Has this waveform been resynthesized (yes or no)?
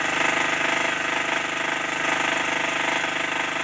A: no